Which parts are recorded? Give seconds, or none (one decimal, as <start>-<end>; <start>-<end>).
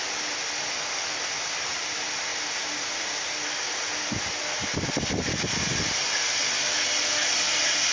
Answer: 0.0-7.9